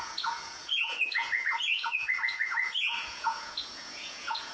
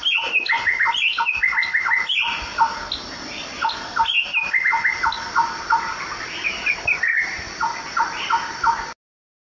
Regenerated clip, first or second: first